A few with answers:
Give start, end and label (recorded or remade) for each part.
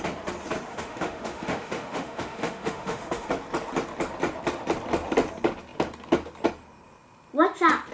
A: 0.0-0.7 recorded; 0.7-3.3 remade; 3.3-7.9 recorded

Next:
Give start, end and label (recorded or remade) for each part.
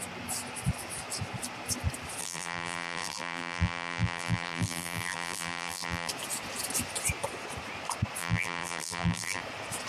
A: 0.0-2.2 recorded; 2.2-6.1 remade; 6.1-8.2 recorded; 8.2-9.4 remade; 9.4-9.9 recorded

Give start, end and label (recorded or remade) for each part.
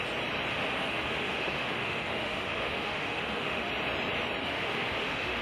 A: 0.0-0.5 recorded; 0.5-3.7 remade; 3.7-4.4 recorded; 4.4-5.4 remade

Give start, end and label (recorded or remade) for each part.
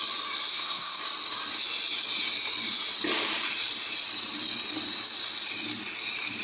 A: 0.0-0.5 recorded; 0.5-1.0 remade; 1.0-6.4 recorded